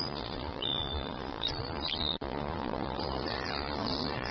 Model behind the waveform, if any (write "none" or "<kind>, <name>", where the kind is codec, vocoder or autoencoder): vocoder, Vocos